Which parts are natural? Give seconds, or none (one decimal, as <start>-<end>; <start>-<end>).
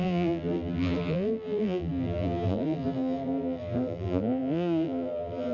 none